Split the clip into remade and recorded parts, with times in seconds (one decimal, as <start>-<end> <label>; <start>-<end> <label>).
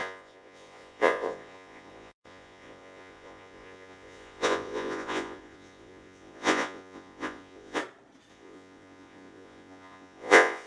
0.0-7.8 remade; 7.8-8.3 recorded; 8.3-10.7 remade